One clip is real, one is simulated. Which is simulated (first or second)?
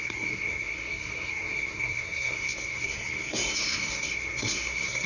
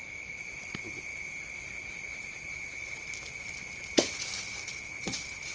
first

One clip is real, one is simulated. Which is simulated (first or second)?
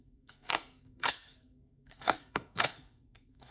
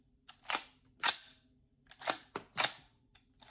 first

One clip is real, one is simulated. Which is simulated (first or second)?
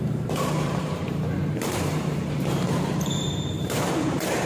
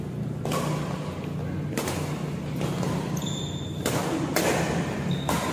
first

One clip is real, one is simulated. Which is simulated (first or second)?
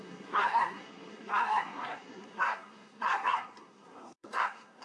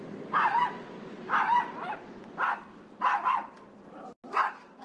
first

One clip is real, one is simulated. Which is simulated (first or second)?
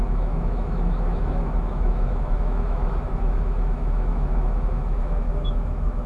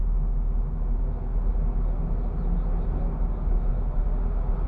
first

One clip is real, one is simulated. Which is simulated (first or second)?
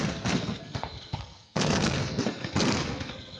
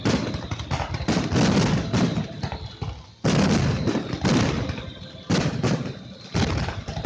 first